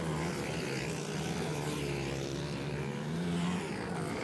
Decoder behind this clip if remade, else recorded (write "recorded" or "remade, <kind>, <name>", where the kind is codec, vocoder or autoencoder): recorded